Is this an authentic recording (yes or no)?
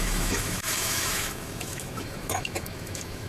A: no